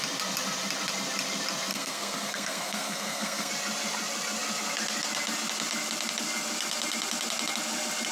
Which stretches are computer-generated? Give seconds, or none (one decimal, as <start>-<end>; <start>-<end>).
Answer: 1.7-3.5